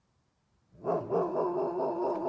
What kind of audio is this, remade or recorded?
recorded